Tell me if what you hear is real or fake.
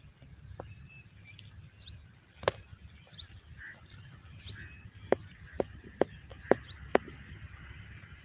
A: real